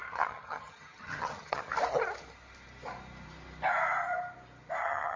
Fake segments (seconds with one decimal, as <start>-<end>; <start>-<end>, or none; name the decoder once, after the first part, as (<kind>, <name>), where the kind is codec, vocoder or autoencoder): 0.0-1.7 (vocoder, HiFi-GAN); 4.8-5.2